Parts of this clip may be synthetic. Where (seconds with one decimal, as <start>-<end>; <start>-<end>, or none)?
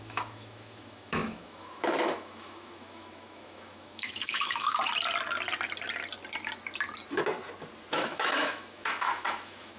0.0-4.8; 7.9-9.8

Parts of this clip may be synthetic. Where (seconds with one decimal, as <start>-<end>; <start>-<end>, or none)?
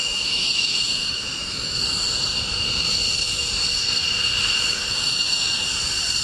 0.0-1.8; 4.7-5.7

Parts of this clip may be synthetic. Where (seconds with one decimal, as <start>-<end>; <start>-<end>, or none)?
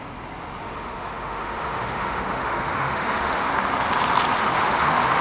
0.6-3.5; 4.4-5.2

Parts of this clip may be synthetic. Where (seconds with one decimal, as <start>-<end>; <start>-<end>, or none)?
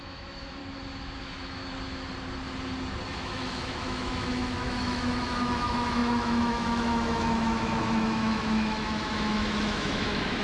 0.0-0.6; 1.2-1.6; 3.1-10.4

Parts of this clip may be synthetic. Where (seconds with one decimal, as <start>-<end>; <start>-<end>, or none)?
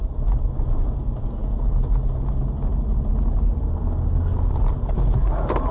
none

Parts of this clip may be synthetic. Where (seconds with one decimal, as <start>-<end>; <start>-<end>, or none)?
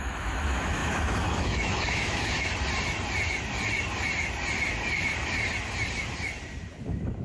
0.0-2.5; 6.8-7.2